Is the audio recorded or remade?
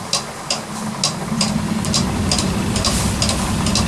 recorded